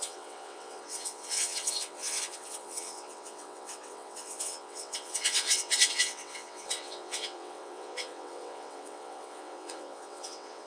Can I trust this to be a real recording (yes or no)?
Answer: no